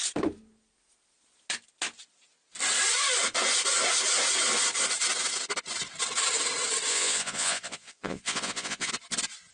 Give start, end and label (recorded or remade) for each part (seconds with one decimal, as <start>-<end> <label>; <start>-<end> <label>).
0.0-6.9 recorded; 6.9-8.9 remade; 8.9-9.5 recorded